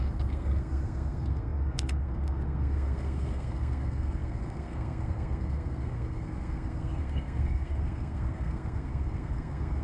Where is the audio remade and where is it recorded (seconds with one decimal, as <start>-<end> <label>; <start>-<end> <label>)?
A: 0.0-9.8 remade